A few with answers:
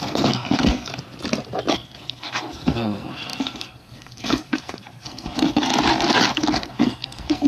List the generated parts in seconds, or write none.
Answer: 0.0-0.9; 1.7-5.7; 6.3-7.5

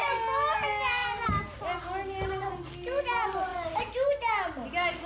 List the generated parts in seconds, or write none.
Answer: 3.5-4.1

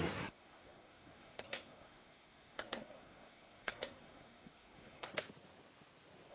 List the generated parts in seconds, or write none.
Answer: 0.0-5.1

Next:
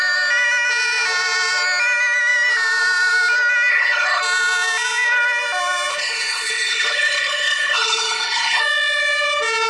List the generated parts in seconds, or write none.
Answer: 3.7-4.2; 5.9-8.6

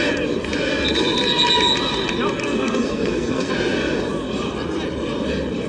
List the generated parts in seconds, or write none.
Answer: 2.4-3.5

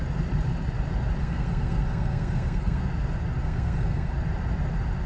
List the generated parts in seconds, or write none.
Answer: 1.2-2.8; 3.4-4.1

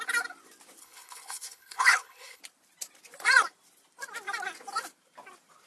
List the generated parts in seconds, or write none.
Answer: 0.8-2.4